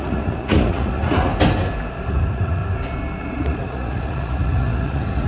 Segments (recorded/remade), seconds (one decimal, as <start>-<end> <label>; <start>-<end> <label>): 0.0-1.3 remade; 1.3-2.1 recorded; 2.1-2.6 remade; 2.6-3.2 recorded; 3.2-5.3 remade